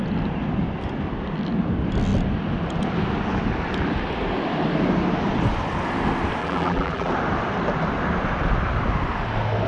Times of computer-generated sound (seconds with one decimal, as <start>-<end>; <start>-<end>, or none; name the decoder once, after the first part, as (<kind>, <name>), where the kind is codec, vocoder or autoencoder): 6.4-7.1 (vocoder, BigVGAN v2)